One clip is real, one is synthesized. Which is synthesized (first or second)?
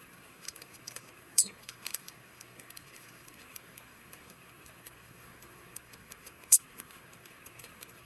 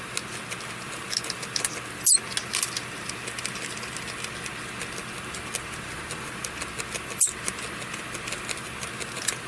first